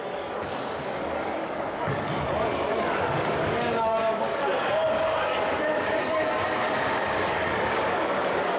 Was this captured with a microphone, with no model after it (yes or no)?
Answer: no